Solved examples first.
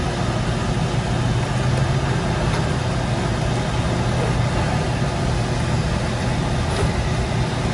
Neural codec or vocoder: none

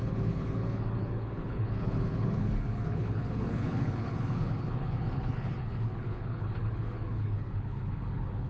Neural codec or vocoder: codec, HILCodec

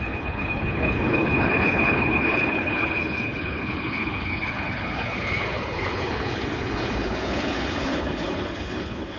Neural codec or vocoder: codec, HILCodec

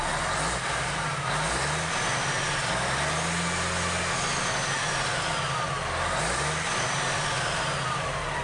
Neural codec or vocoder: none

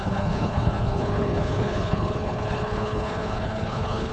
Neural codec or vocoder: codec, HILCodec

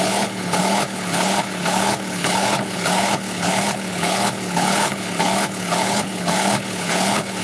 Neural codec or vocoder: codec, HILCodec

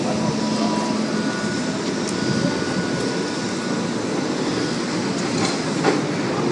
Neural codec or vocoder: none